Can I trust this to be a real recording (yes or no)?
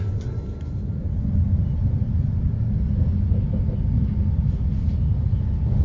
yes